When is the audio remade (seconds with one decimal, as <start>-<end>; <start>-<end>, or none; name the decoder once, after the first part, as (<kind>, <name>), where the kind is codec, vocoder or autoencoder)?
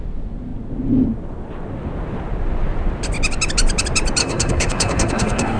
4.2-5.6 (codec, SNAC)